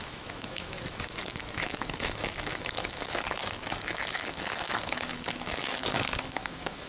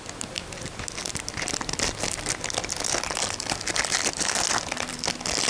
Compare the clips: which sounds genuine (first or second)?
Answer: second